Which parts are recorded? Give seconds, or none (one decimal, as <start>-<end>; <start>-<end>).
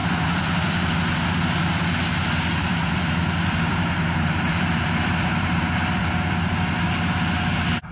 0.9-2.7; 6.0-7.9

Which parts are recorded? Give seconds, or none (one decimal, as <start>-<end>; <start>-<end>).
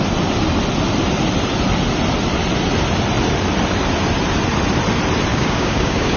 0.0-5.3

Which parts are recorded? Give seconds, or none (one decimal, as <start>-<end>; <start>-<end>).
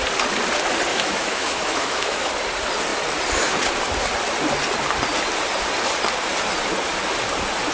0.0-0.9; 2.3-7.7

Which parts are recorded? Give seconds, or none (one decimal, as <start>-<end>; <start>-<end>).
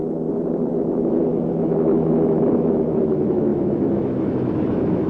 0.0-0.7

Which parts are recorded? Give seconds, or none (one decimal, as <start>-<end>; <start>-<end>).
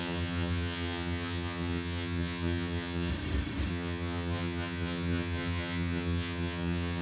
3.1-3.7